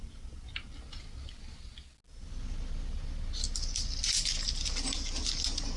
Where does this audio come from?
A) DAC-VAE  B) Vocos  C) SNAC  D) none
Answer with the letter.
D